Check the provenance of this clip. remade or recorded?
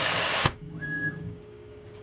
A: remade